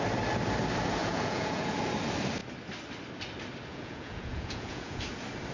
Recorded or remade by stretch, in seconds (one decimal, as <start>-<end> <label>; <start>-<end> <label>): 0.0-1.0 recorded; 1.0-1.8 remade; 1.8-3.7 recorded; 3.7-5.0 remade; 5.0-5.5 recorded